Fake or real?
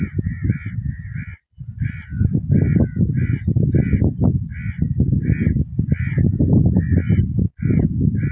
real